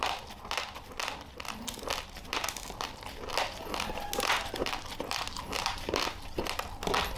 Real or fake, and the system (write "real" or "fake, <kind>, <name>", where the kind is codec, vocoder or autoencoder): real